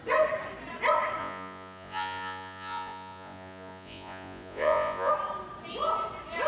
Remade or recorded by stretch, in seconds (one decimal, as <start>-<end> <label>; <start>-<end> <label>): 0.0-1.2 recorded; 1.2-5.1 remade; 5.1-6.5 recorded